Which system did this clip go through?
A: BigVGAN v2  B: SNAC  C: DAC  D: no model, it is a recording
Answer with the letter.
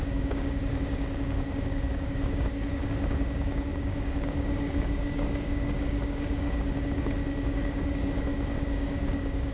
C